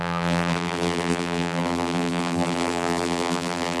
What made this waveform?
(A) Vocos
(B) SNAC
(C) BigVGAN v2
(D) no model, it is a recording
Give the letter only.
C